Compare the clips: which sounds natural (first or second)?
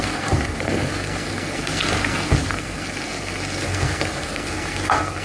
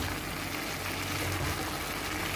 second